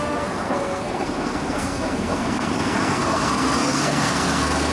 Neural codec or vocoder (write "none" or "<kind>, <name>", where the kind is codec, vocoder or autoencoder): codec, SNAC